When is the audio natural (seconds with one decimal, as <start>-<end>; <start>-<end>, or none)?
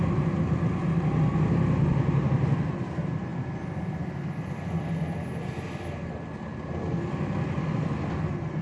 0.0-8.6